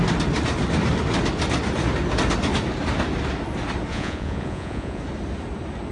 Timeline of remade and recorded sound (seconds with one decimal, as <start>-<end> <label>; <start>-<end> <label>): 0.0-3.9 recorded; 3.9-5.0 remade; 5.0-5.9 recorded